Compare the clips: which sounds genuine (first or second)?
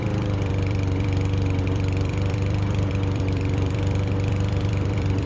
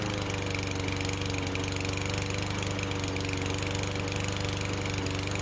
second